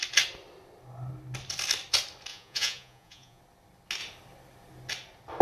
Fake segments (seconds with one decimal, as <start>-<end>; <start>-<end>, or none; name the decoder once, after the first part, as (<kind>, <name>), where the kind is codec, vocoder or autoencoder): 2.3-3.4 (vocoder, Vocos)